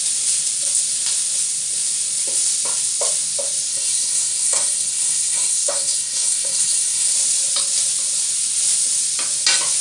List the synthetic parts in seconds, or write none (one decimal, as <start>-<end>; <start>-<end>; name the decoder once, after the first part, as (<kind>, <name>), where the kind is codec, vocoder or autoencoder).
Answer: 3.7-7.1 (codec, SNAC)